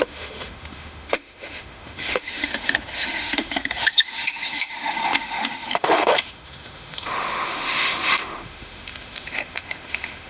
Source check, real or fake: fake